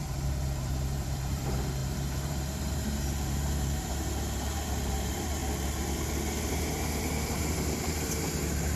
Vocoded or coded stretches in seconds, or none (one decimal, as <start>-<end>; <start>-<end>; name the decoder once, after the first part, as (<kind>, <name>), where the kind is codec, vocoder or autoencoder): 0.0-5.4 (vocoder, BigVGAN v2); 6.5-8.8